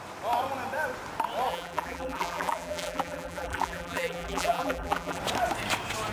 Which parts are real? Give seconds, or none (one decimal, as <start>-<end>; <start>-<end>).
0.0-1.5; 5.2-6.1